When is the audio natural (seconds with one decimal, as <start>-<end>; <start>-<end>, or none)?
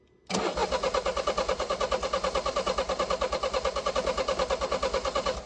0.0-5.5